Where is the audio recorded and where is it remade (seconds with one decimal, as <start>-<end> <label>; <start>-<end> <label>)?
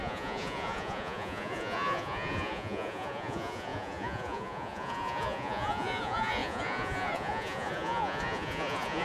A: 0.0-9.0 remade